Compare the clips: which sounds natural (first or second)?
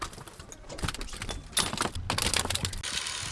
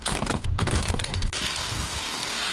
first